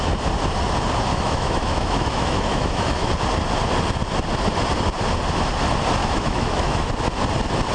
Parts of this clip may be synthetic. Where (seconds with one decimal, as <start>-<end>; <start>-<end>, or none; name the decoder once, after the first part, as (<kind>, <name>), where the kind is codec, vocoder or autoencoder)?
1.1-3.1 (autoencoder, DAC-VAE); 6.0-6.9